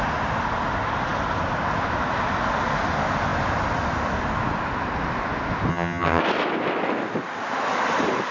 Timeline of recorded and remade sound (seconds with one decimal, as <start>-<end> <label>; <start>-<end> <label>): 0.0-5.7 recorded; 5.7-6.2 remade; 6.2-8.3 recorded